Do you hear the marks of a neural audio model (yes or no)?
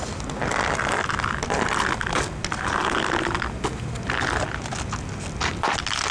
no